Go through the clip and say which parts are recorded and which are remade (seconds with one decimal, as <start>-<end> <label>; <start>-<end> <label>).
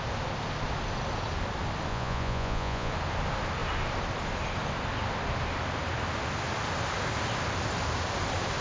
0.0-1.9 recorded; 1.9-2.9 remade; 2.9-8.6 recorded